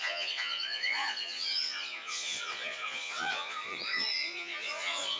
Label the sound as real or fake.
fake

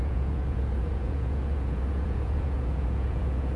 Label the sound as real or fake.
fake